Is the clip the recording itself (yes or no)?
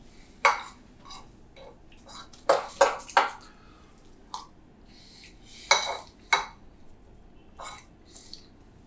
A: yes